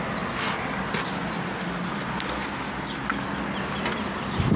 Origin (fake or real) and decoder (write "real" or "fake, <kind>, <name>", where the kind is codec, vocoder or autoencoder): real